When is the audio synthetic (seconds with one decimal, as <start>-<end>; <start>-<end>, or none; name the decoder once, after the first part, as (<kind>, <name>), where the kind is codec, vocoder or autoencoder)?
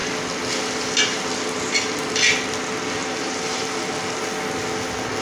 3.0-3.9 (vocoder, BigVGAN v2)